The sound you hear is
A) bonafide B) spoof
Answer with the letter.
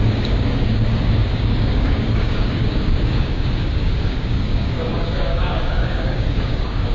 B